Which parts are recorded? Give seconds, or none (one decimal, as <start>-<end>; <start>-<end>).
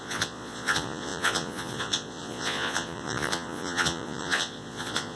none